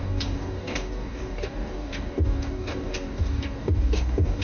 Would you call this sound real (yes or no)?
no